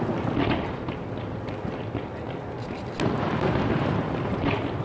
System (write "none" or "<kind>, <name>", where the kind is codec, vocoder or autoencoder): none